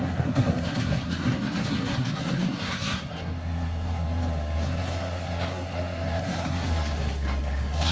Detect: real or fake fake